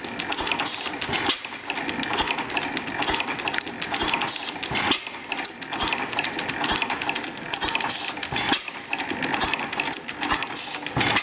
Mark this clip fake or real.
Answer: real